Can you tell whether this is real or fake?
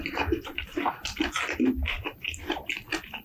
real